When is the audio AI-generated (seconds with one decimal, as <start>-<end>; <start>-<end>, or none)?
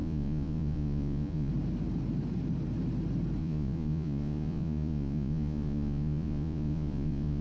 0.0-1.5; 3.4-7.4